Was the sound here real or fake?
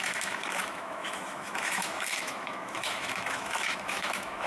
fake